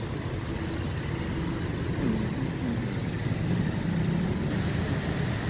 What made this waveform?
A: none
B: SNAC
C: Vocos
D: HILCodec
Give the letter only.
A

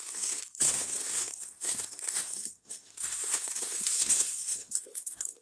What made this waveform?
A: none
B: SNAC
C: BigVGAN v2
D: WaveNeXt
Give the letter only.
B